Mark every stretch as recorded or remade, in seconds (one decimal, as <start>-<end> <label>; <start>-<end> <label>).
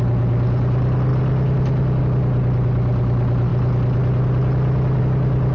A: 0.0-5.5 recorded